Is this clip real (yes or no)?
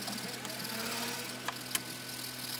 yes